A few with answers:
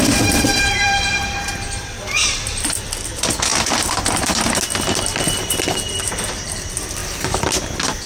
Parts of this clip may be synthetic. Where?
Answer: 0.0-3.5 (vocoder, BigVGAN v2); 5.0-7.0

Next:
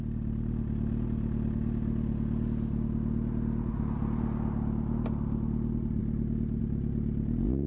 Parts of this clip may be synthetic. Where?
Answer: none